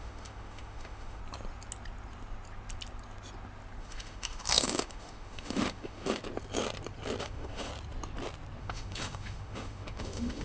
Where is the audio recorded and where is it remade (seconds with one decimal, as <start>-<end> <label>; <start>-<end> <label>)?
0.0-1.2 remade; 1.2-3.8 recorded; 3.8-6.2 remade; 6.2-7.2 recorded; 7.2-7.7 remade; 7.7-8.6 recorded; 8.6-10.4 remade